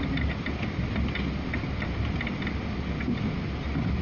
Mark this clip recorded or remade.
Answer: recorded